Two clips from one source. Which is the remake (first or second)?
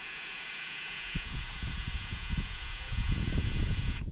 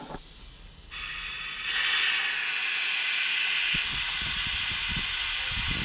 first